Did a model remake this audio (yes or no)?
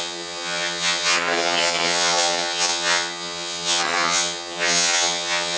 yes